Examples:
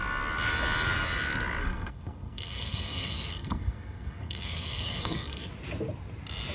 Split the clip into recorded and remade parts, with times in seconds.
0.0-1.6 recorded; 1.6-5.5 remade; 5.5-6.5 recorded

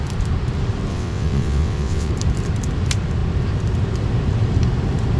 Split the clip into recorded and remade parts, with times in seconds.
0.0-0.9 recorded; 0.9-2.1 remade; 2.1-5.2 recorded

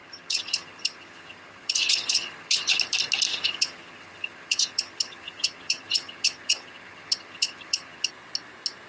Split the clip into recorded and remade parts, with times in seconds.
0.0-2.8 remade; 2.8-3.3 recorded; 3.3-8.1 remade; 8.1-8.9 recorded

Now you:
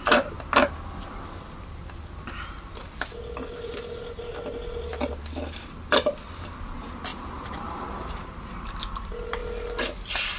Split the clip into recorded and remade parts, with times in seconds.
0.0-10.4 recorded

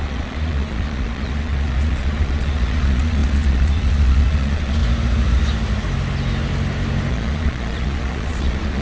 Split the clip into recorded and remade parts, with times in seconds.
0.0-4.8 remade; 4.8-7.1 recorded; 7.1-8.8 remade